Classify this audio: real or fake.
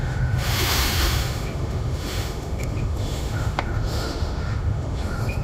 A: fake